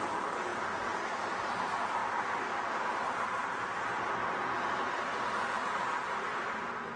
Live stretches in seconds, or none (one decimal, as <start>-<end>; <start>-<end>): 0.0-7.0